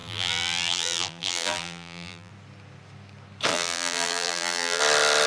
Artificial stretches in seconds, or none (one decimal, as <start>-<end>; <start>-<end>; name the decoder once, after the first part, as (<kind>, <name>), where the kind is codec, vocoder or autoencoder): 0.0-2.3 (vocoder, BigVGAN v2); 3.5-4.8